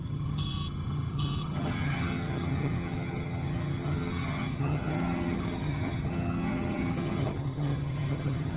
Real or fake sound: fake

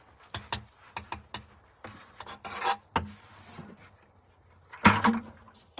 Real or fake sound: real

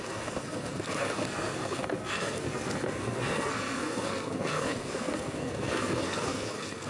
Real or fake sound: fake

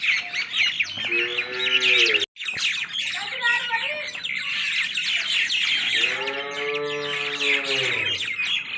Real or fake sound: real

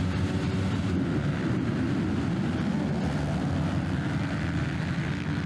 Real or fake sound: real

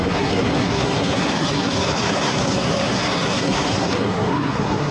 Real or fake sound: fake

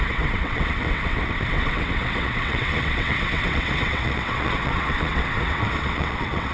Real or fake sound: fake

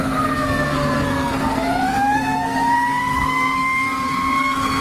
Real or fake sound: fake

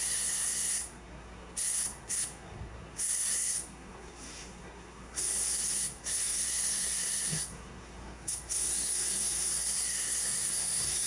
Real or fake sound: fake